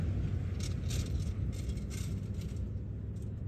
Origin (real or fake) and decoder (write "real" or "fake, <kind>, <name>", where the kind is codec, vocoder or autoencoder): real